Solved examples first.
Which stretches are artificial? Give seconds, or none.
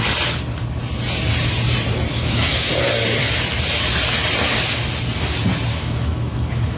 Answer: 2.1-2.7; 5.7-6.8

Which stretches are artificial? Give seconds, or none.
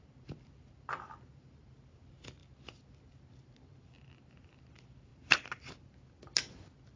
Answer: 0.0-5.1; 6.1-7.0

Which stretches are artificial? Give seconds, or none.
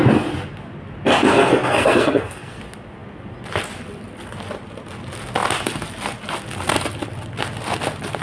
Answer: 1.3-2.6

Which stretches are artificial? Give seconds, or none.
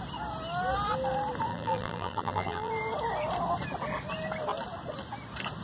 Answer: 1.5-2.7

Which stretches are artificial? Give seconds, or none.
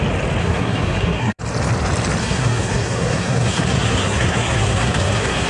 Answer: 0.4-1.4; 2.2-5.5